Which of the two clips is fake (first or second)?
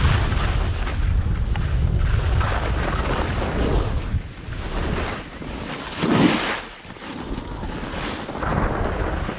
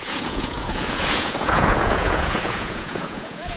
second